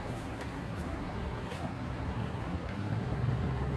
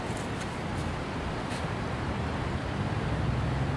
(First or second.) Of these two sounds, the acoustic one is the second